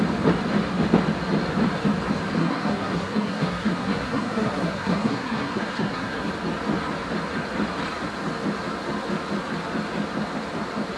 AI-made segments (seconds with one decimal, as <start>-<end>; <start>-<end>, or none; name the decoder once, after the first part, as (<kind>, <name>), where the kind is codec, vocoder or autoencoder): 2.4-6.3 (codec, SNAC)